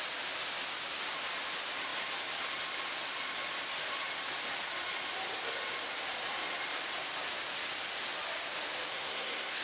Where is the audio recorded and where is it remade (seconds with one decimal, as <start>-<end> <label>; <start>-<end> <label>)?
0.0-8.9 recorded; 8.9-9.6 remade